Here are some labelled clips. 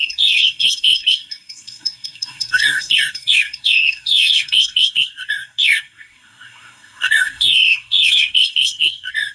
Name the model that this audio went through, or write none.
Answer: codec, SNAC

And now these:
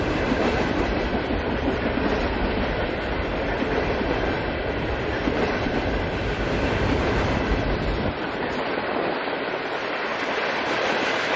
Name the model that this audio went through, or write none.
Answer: vocoder, BigVGAN v2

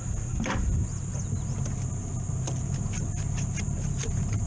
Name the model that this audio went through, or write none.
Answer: none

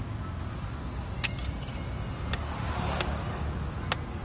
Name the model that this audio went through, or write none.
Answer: none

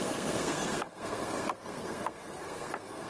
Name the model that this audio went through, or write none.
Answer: codec, SNAC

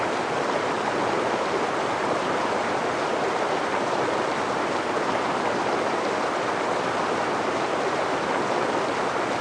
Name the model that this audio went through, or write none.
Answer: none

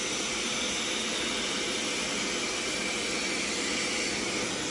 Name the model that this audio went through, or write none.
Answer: none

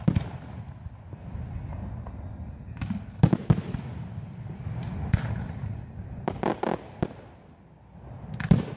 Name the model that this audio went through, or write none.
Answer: none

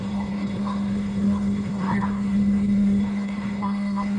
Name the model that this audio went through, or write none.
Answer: codec, SNAC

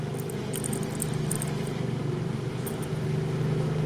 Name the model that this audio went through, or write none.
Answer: none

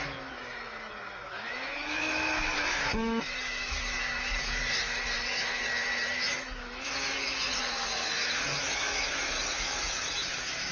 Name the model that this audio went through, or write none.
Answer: autoencoder, DAC-VAE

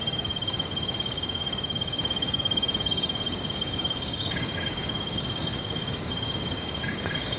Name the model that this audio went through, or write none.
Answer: codec, DAC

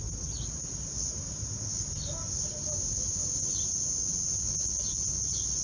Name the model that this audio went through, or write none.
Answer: none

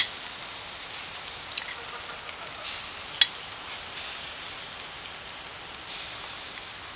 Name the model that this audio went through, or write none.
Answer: none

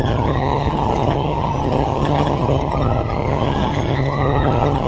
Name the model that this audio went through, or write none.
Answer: vocoder, HiFi-GAN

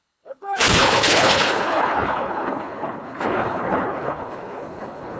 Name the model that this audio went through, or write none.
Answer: codec, HILCodec